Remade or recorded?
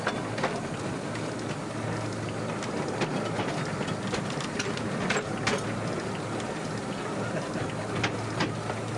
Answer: recorded